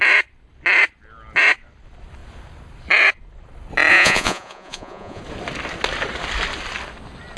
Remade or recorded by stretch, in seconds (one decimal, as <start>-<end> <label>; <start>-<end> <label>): 0.0-3.9 recorded; 3.9-5.2 remade; 5.2-7.4 recorded